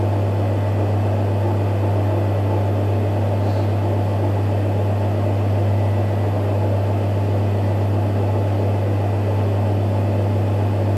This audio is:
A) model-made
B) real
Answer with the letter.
B